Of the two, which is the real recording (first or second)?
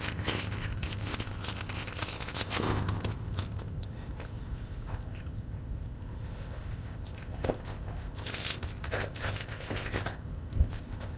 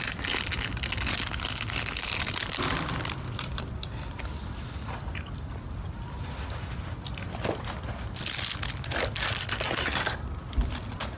second